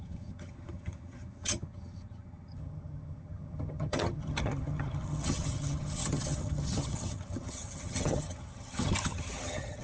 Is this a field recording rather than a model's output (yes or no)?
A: no